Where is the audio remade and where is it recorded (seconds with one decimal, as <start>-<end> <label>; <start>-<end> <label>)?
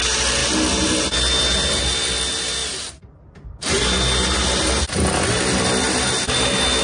0.0-6.8 recorded